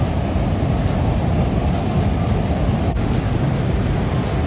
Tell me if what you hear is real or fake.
real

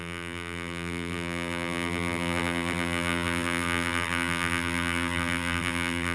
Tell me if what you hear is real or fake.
fake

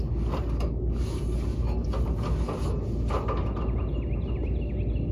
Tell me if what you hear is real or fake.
real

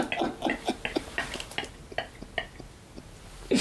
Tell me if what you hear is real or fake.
real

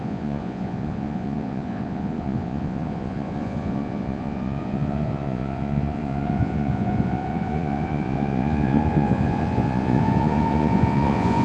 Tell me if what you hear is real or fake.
fake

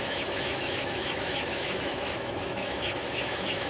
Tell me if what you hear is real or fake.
fake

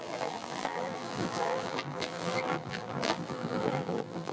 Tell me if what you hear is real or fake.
fake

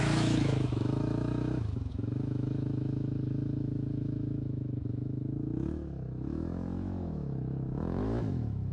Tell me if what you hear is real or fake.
fake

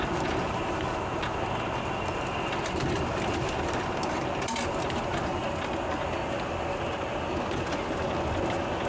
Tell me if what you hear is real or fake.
real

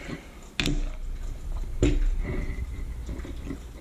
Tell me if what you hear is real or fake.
real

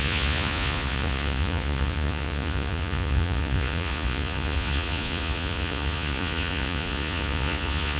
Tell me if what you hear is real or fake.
fake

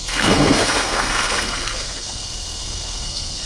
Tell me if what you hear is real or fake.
fake